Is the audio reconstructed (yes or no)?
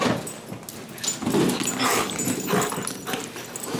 no